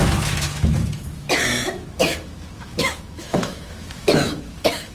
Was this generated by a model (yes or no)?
yes